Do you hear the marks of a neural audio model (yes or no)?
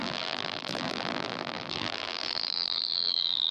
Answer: yes